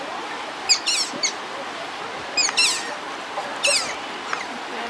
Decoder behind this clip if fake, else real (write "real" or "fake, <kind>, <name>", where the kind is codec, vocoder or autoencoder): real